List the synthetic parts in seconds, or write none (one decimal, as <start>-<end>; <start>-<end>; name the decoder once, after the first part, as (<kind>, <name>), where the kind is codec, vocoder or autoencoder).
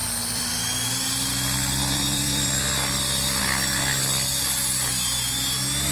0.0-3.4 (vocoder, BigVGAN v2)